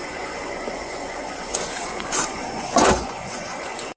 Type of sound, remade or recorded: remade